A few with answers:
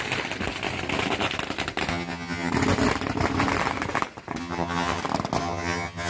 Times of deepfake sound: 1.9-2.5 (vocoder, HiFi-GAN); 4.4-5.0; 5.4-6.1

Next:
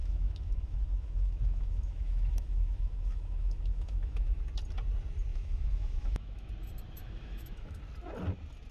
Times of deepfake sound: 0.0-4.4 (autoencoder, DAC-VAE); 5.3-6.5; 7.0-7.8

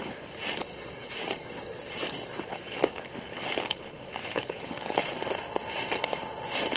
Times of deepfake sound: 0.6-2.4 (codec, DAC); 4.2-5.1

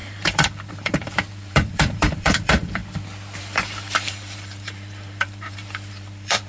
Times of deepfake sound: 0.0-2.8 (vocoder, BigVGAN v2); 3.4-6.5

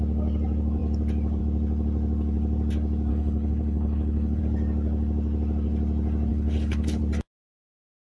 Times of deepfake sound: 3.1-4.4 (codec, HILCodec); 6.3-7.0